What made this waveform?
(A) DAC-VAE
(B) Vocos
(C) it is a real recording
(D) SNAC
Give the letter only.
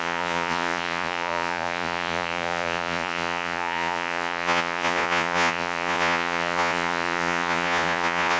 B